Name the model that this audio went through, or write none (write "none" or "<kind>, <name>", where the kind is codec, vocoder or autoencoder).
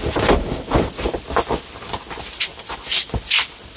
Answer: none